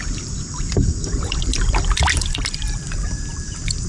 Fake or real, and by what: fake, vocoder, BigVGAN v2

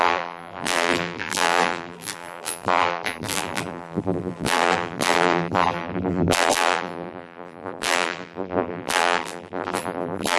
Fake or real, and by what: fake, vocoder, BigVGAN v2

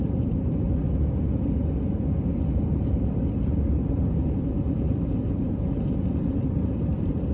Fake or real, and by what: fake, vocoder, BigVGAN v2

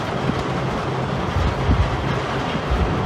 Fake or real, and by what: real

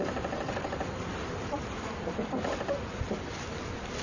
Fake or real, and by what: real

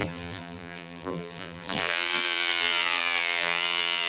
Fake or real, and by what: fake, vocoder, BigVGAN v2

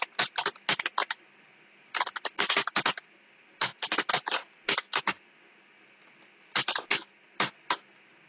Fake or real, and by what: real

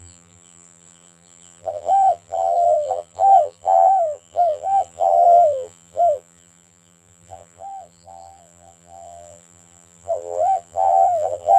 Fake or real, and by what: fake, vocoder, BigVGAN v2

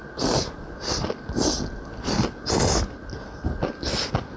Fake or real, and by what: real